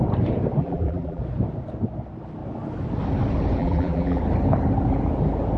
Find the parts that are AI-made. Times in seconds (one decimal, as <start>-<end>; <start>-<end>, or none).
0.6-1.2; 3.6-4.2